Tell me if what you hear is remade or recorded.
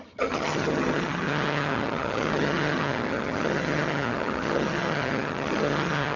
remade